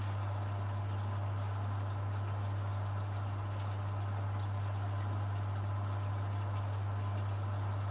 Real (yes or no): yes